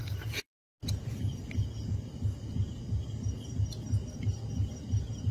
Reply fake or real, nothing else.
real